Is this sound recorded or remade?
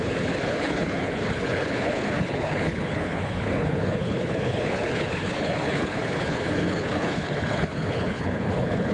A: remade